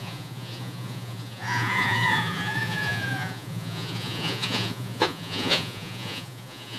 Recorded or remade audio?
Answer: remade